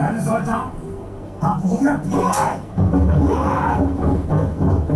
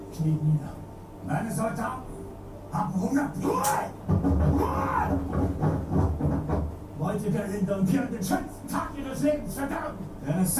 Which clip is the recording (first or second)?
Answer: second